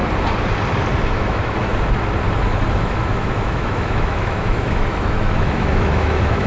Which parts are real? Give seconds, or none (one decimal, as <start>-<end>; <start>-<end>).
0.0-1.1; 1.7-2.7